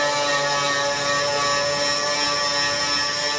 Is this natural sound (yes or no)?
yes